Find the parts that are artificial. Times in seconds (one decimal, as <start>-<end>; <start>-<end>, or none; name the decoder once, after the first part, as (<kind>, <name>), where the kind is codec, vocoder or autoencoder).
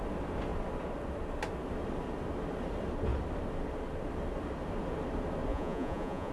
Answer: 5.5-6.3 (vocoder, Vocos)